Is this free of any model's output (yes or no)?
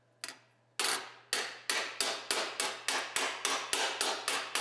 yes